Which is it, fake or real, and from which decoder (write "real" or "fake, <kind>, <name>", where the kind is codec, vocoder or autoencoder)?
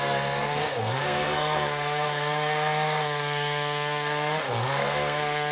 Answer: fake, codec, SNAC